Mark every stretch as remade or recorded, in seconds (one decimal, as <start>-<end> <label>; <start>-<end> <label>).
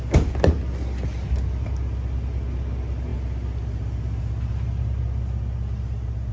0.0-6.3 recorded